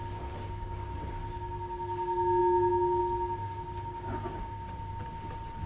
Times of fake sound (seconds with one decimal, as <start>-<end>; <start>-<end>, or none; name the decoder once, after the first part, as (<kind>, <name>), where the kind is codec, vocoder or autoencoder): 0.0-1.1 (codec, DAC); 2.4-3.0; 3.4-4.9